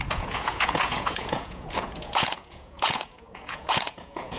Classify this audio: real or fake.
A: fake